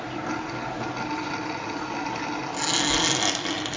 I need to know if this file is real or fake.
real